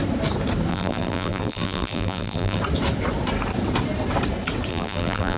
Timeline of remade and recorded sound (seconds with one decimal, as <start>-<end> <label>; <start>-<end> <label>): 0.0-0.7 recorded; 0.7-2.6 remade; 2.6-4.7 recorded; 4.7-5.4 remade